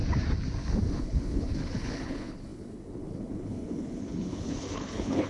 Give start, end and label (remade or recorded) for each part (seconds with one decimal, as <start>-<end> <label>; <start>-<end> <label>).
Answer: 0.0-1.0 recorded; 1.0-5.3 remade